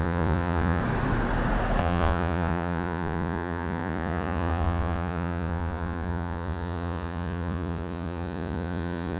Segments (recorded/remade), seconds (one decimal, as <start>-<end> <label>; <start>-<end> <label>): 0.0-0.8 remade; 0.8-1.8 recorded; 1.8-9.2 remade